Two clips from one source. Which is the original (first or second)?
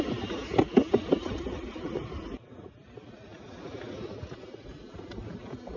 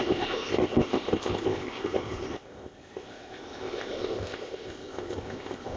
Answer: first